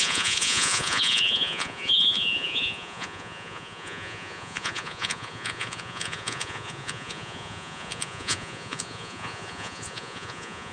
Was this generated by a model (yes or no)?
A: yes